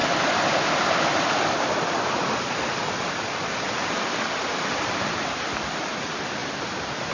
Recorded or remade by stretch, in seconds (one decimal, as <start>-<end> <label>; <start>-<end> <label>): 0.0-3.2 remade; 3.2-4.5 recorded; 4.5-5.2 remade; 5.2-7.1 recorded